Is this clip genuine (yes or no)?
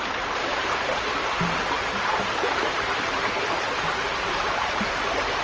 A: no